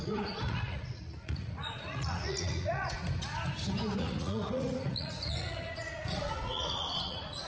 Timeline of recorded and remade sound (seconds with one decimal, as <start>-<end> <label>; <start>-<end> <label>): 0.0-3.0 remade; 3.0-4.0 recorded; 4.0-7.5 remade